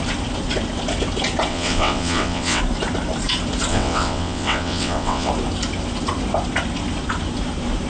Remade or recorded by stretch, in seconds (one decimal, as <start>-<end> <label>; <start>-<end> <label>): 0.0-1.5 recorded; 1.5-2.6 remade; 2.6-3.7 recorded; 3.7-5.3 remade; 5.3-7.9 recorded